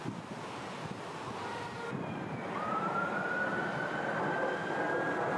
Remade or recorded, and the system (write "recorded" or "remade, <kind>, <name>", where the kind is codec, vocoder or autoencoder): recorded